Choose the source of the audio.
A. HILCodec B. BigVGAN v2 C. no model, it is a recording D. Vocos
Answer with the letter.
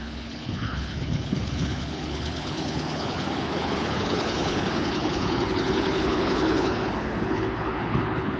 A